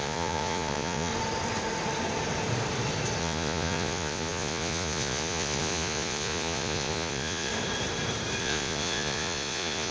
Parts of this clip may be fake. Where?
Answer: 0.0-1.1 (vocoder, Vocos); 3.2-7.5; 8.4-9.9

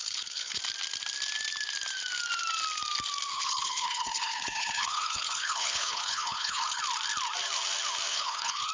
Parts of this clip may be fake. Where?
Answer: 0.0-0.6 (codec, HILCodec); 3.3-6.8; 8.1-8.7